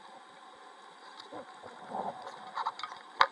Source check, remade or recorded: recorded